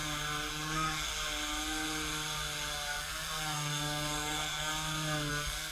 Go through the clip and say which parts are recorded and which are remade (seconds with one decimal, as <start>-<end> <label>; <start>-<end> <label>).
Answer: 0.0-0.5 recorded; 0.5-1.1 remade; 1.1-3.0 recorded; 3.0-4.7 remade; 4.7-5.3 recorded; 5.3-5.7 remade